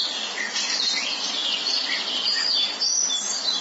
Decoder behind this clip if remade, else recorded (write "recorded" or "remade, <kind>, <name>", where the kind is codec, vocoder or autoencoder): recorded